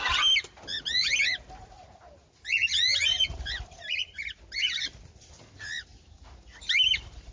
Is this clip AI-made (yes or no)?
no